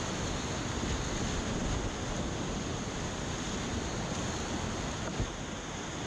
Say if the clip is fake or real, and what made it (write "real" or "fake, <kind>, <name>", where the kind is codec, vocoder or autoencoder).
real